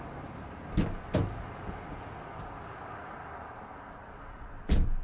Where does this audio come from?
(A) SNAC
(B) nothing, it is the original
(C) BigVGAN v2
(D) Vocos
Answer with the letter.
B